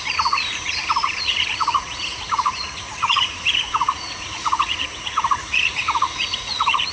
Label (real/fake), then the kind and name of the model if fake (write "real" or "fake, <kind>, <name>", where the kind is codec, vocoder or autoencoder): fake, vocoder, Vocos